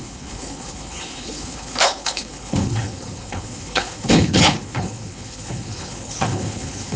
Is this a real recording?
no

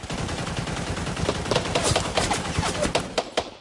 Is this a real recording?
yes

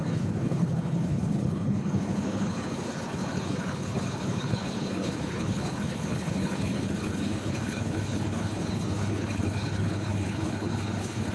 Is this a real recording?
no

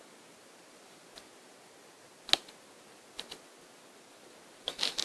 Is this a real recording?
yes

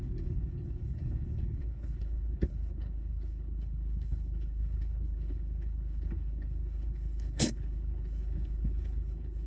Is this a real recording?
no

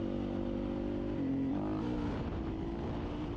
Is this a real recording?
yes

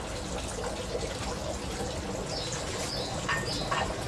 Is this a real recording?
yes